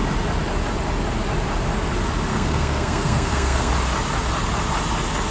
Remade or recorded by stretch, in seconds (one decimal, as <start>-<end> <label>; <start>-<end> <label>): 0.0-2.3 recorded; 2.3-3.7 remade; 3.7-5.3 recorded